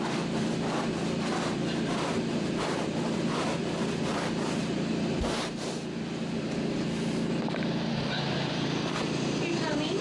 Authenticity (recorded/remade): recorded